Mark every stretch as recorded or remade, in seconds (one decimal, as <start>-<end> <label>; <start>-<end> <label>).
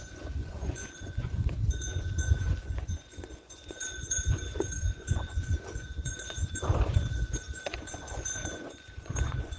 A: 0.0-9.6 remade